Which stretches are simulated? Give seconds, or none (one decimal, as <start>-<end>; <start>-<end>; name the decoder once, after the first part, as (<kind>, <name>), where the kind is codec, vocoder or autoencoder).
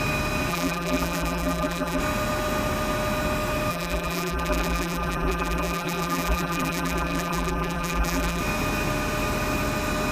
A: 0.5-2.0 (vocoder, BigVGAN v2); 3.7-8.4